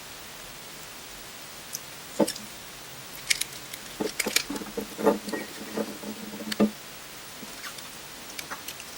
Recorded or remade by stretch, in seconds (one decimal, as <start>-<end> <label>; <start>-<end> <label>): 0.0-6.2 remade; 6.2-7.1 recorded; 7.1-9.0 remade

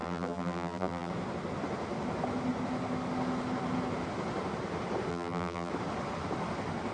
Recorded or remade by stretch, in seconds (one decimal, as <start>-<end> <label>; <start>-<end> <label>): 0.0-1.1 remade; 1.1-5.1 recorded; 5.1-5.7 remade; 5.7-6.9 recorded

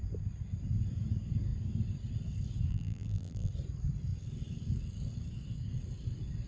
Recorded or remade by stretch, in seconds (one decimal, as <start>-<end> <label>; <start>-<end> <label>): 0.0-2.7 recorded; 2.7-3.5 remade; 3.5-6.5 recorded

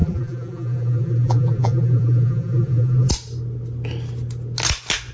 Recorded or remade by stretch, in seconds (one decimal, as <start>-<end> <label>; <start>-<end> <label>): 0.0-3.1 remade; 3.1-5.1 recorded

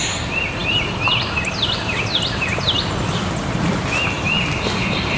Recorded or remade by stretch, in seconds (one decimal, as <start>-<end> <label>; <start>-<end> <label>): 0.0-5.2 recorded

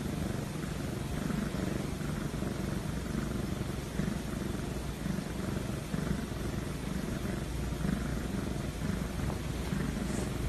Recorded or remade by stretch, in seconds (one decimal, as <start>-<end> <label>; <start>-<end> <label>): 0.0-8.1 recorded; 8.1-9.7 remade; 9.7-10.5 recorded

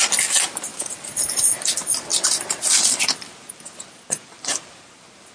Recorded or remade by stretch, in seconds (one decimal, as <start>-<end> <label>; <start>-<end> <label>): 0.0-0.7 recorded; 0.7-1.3 remade; 1.3-2.1 recorded; 2.1-5.3 remade

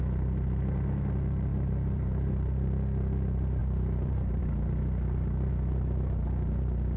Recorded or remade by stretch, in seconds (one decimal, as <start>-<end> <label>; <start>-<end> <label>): 0.0-1.5 recorded; 1.5-2.3 remade; 2.3-3.6 recorded; 3.6-4.4 remade; 4.4-7.0 recorded